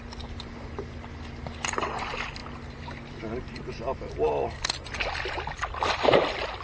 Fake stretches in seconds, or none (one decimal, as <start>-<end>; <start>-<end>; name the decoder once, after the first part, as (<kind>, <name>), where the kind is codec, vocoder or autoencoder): none